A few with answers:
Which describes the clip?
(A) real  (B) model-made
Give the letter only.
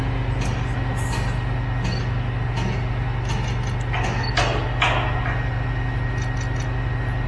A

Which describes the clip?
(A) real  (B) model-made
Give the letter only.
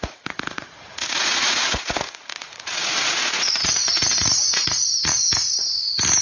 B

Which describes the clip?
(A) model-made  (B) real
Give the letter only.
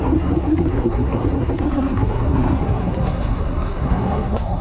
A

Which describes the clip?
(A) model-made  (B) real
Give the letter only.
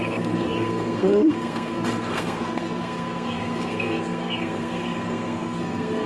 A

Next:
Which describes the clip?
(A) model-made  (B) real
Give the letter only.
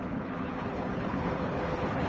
A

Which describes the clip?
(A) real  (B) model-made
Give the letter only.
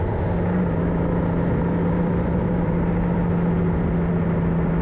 A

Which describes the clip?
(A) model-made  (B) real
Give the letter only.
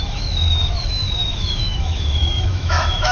A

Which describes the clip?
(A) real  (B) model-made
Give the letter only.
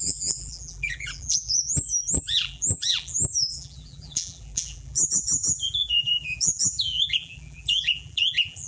B